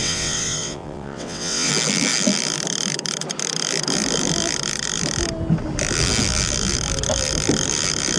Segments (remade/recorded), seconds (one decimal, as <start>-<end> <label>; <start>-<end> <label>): 0.0-1.7 remade; 1.7-8.2 recorded